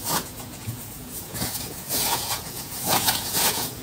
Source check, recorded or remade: remade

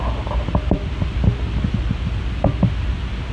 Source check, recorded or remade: recorded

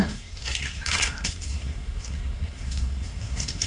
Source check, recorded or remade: remade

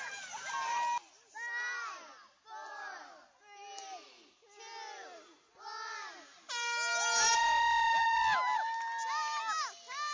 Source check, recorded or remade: recorded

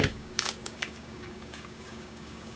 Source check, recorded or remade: remade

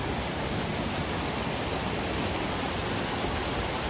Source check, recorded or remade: recorded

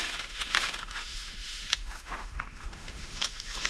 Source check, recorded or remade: remade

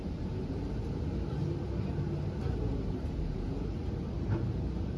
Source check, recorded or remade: remade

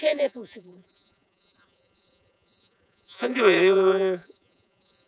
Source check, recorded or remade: remade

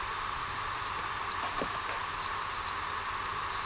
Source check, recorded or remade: remade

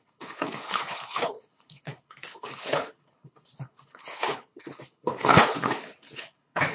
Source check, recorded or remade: remade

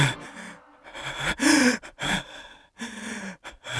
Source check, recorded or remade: recorded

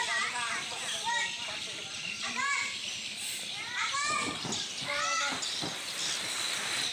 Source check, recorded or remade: recorded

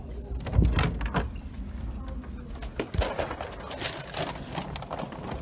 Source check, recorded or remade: recorded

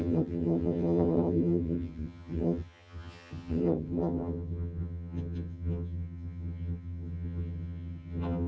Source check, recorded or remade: remade